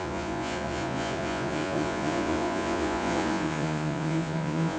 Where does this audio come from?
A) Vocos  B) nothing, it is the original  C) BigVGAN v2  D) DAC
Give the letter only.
A